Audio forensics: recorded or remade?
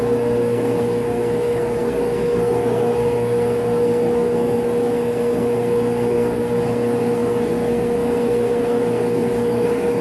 remade